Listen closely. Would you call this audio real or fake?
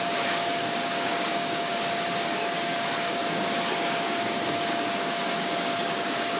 fake